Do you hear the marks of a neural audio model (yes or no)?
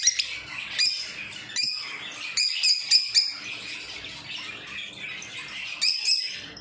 no